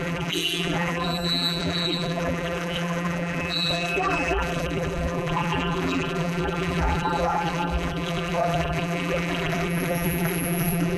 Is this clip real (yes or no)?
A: no